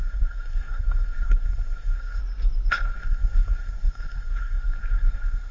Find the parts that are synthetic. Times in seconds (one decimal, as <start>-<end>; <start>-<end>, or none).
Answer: 0.0-2.2; 2.7-5.5